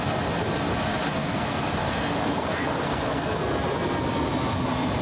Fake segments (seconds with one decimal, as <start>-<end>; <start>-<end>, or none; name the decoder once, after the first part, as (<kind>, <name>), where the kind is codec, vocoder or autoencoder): 1.1-3.4 (codec, SNAC)

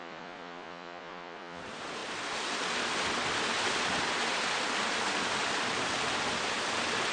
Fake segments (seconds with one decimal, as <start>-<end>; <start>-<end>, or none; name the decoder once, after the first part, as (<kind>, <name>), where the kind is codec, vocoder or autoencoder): 0.0-1.6 (vocoder, Vocos)